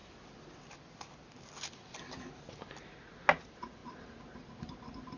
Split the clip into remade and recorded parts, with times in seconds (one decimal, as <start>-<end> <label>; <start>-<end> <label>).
0.0-5.2 recorded